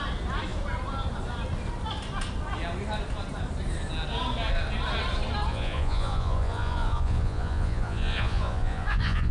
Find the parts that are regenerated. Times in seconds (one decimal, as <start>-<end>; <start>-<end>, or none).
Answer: 5.5-9.3